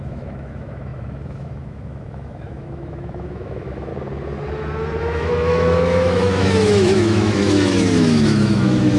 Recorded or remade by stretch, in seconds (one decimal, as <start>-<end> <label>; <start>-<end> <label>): 0.0-3.9 remade; 3.9-5.0 recorded; 5.0-9.0 remade